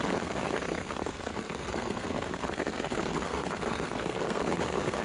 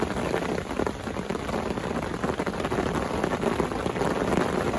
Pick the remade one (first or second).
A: first